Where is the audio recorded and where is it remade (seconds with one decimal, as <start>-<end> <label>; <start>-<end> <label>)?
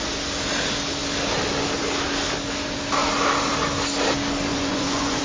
0.0-4.5 recorded; 4.5-5.2 remade